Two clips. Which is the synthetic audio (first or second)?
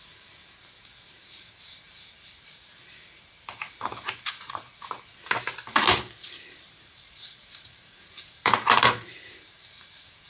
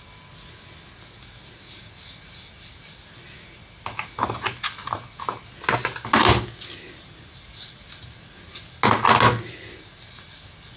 first